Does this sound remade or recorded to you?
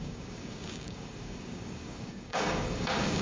remade